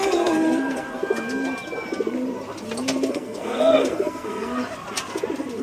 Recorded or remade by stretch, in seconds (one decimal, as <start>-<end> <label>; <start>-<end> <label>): 0.0-1.0 remade; 1.0-3.1 recorded; 3.1-4.6 remade; 4.6-5.6 recorded